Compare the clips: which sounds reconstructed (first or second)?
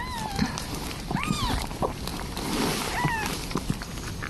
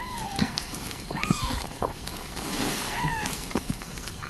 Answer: second